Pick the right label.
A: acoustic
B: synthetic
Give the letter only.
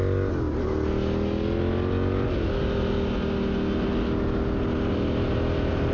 A